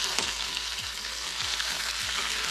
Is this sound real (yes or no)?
no